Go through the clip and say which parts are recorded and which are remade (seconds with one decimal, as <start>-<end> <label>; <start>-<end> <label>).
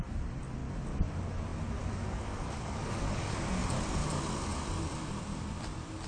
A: 0.0-1.8 recorded; 1.8-3.5 remade; 3.5-6.1 recorded